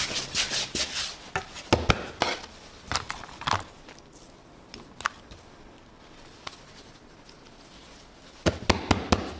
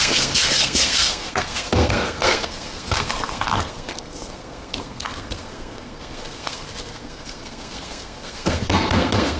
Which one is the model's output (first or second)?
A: second